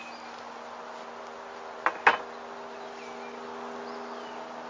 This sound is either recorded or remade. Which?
recorded